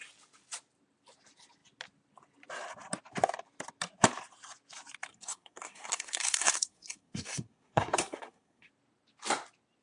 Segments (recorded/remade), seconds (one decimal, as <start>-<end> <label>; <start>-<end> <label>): 0.0-5.1 recorded; 5.1-8.7 remade; 8.7-9.8 recorded